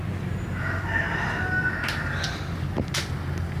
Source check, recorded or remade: recorded